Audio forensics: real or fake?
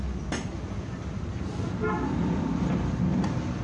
real